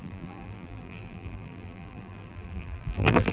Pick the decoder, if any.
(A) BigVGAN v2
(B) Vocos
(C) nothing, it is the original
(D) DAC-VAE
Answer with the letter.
A